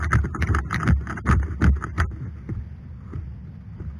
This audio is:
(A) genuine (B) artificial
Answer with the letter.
A